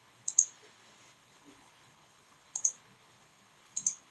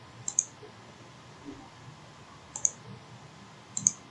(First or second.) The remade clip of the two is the first